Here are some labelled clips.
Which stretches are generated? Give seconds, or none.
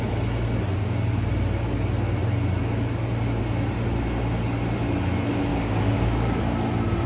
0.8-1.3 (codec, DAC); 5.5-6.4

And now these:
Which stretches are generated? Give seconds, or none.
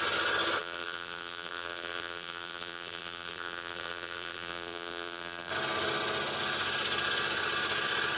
0.6-5.5 (vocoder, BigVGAN v2)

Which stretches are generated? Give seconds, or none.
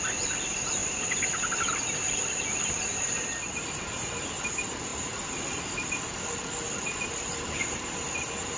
4.9-6.2 (vocoder, BigVGAN v2)